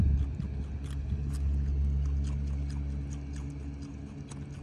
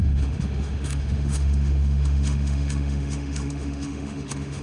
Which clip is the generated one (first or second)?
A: second